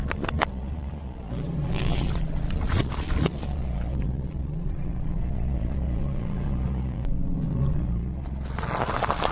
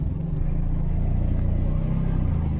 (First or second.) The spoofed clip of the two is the first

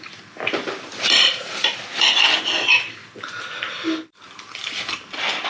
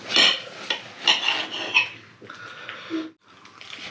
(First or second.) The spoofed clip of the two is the first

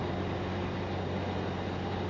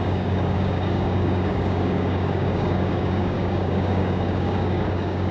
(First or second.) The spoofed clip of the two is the second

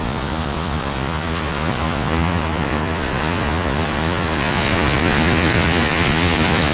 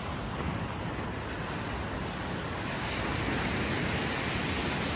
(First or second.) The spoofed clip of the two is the first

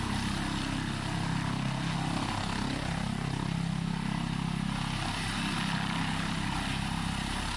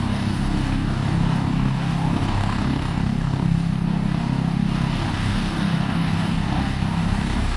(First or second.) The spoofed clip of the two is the second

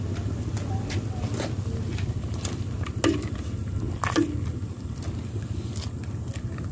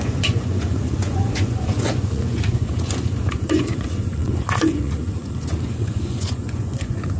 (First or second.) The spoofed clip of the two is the second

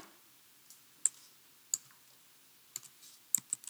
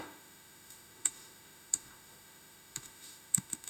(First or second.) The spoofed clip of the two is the second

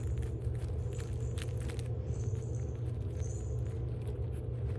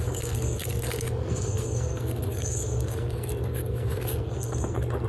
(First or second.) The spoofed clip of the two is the second